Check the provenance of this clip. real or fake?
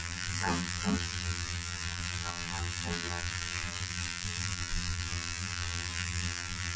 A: fake